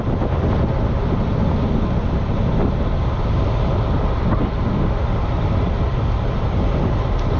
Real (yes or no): yes